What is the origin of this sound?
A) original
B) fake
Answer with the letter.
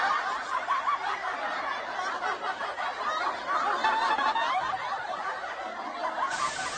A